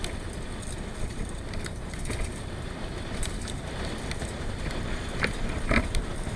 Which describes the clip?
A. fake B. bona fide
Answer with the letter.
A